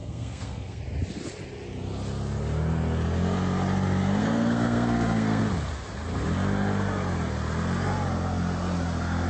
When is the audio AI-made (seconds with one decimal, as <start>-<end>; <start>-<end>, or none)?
0.0-0.8; 4.2-5.4